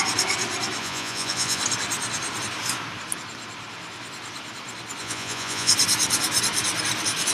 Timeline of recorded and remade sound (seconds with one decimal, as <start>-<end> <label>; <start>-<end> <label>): 0.0-0.8 recorded; 0.8-1.6 remade; 1.6-5.0 recorded; 5.0-5.7 remade; 5.7-7.3 recorded